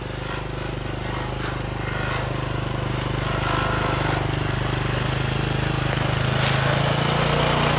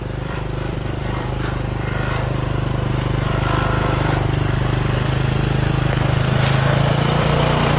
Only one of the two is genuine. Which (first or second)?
first